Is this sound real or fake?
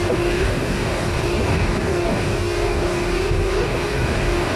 fake